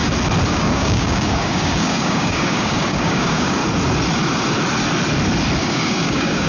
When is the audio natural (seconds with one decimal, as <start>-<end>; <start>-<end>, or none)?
0.0-0.5; 3.6-5.6